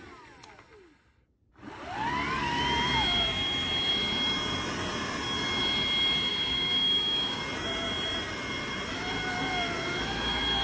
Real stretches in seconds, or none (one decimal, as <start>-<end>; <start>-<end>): 0.0-6.3; 7.4-10.6